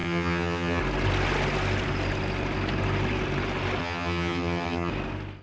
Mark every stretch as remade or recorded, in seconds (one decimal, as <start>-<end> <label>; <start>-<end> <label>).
0.0-0.8 remade; 0.8-3.8 recorded; 3.8-4.9 remade; 4.9-5.4 recorded